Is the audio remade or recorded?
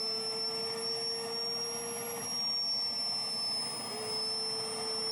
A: recorded